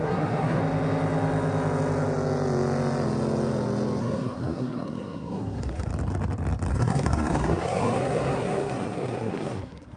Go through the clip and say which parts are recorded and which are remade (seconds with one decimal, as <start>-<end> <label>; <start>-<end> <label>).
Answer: 0.0-0.6 remade; 0.6-4.0 recorded; 4.0-5.9 remade; 5.9-6.7 recorded; 6.7-10.0 remade